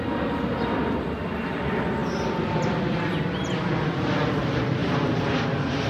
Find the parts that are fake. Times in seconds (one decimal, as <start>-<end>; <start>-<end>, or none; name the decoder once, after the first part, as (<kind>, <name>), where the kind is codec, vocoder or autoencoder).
none